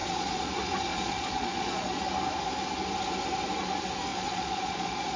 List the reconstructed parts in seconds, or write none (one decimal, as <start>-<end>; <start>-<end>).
0.0-0.5; 0.9-2.0; 4.1-5.2